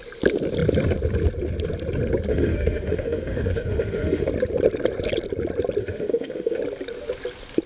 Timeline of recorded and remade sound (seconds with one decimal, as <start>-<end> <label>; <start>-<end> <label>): 0.0-2.3 recorded; 2.3-4.3 remade; 4.3-5.8 recorded; 5.8-6.6 remade; 6.6-7.7 recorded